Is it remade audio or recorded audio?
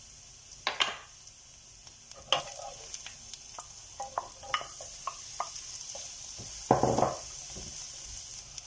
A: recorded